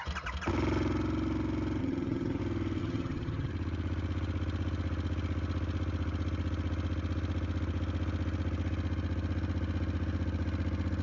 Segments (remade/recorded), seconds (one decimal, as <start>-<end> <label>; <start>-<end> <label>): 0.0-1.8 recorded; 1.8-2.4 remade; 2.4-2.8 recorded; 2.8-3.5 remade; 3.5-11.0 recorded